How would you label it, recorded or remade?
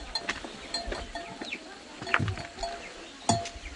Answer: recorded